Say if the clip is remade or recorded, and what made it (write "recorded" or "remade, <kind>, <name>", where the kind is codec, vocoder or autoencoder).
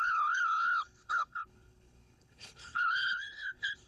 remade, codec, HILCodec